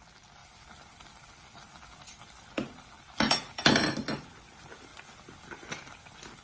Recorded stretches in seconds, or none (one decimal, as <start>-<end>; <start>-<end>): 0.0-6.4